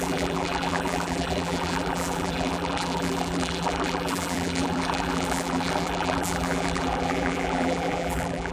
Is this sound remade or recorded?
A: remade